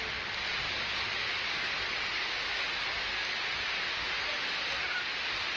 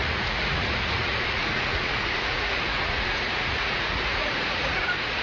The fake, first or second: second